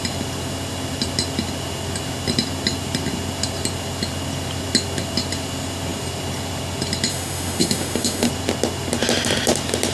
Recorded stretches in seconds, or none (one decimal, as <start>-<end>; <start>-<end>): 0.0-7.1; 8.3-9.9